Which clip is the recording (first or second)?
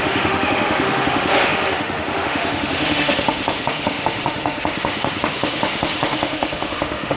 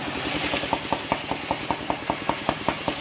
second